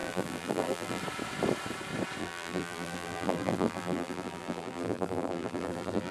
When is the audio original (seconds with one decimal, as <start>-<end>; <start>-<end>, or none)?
1.0-2.2